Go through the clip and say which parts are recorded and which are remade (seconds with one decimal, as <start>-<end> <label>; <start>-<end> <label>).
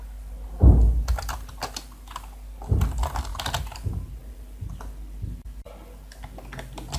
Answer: 0.0-7.0 recorded